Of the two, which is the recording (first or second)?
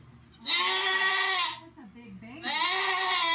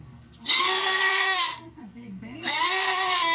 first